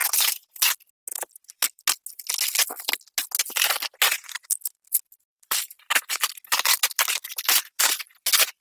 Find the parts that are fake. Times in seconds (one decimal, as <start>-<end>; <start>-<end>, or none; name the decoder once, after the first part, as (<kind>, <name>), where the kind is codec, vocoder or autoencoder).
0.0-0.6 (vocoder, BigVGAN v2); 1.1-1.8; 4.1-8.1